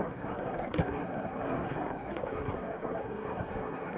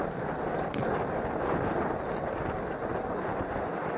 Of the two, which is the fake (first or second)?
first